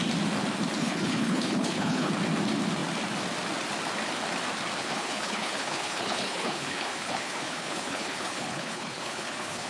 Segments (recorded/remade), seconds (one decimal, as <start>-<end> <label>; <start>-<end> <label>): 0.0-0.8 recorded; 0.8-2.1 remade; 2.1-4.8 recorded; 4.8-9.7 remade